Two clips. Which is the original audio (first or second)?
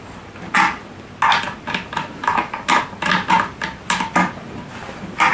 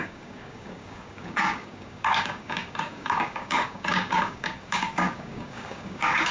first